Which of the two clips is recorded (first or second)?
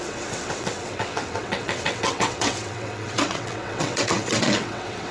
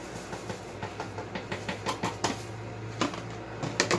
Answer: second